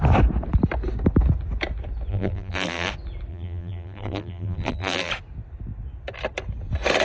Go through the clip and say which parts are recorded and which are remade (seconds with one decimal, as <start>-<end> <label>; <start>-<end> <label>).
0.0-2.1 recorded; 2.1-2.9 remade; 2.9-3.3 recorded; 3.3-5.1 remade; 5.1-7.0 recorded